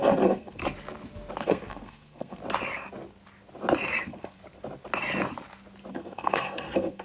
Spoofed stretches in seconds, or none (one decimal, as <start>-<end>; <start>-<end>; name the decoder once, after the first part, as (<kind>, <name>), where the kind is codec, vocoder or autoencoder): 0.0-0.6 (codec, SNAC); 1.4-2.4; 4.0-4.4; 5.9-7.0